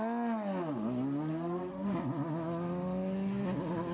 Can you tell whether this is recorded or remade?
recorded